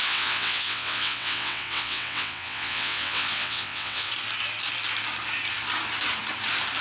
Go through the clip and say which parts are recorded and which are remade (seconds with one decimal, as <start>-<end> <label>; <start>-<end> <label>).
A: 0.0-4.1 remade; 4.1-6.8 recorded